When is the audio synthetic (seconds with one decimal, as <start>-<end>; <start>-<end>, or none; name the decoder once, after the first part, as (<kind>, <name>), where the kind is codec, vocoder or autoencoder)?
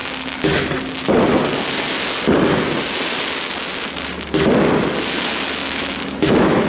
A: 5.6-6.7 (autoencoder, DAC-VAE)